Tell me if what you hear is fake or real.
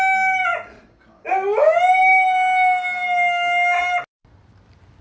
real